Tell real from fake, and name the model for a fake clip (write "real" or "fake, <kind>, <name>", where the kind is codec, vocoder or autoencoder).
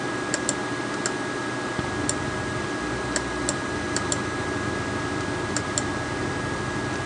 real